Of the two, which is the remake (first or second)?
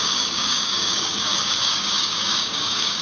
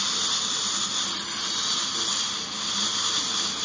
first